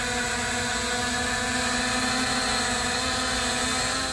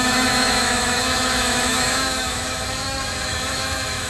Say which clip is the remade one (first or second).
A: second